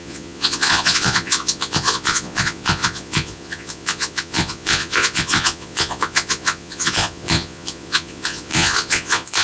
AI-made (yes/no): yes